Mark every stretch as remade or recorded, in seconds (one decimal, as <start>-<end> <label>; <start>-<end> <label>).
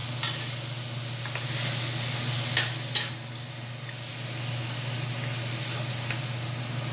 0.0-6.9 recorded